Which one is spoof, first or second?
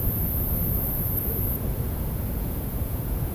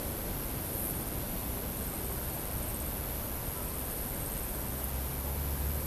first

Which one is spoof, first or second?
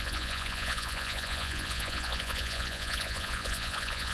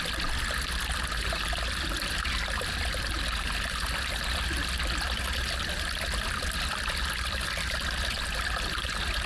first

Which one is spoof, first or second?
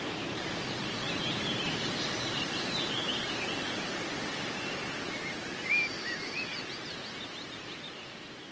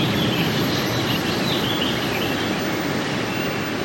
first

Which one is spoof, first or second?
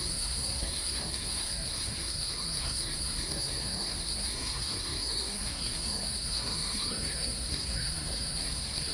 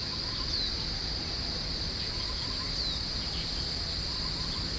first